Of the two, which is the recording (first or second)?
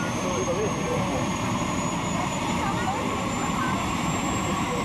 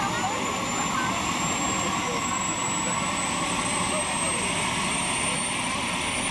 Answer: second